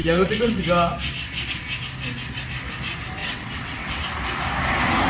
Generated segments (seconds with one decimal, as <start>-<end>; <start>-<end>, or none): 0.0-0.6; 3.2-4.0